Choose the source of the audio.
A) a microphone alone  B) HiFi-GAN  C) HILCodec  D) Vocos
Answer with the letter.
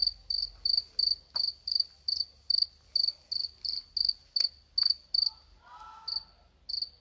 A